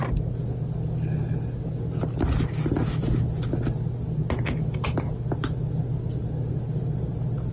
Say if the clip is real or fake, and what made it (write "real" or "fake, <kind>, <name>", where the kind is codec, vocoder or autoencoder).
real